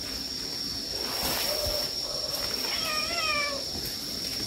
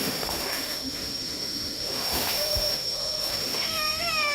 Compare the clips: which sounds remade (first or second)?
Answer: second